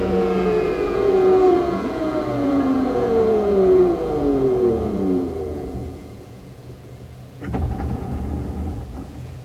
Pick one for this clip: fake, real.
fake